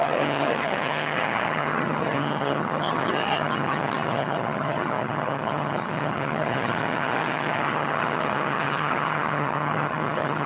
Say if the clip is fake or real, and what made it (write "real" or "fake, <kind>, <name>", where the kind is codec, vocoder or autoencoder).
fake, vocoder, HiFi-GAN